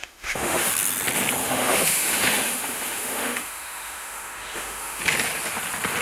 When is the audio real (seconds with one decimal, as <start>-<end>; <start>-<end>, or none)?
0.7-1.4; 5.0-6.0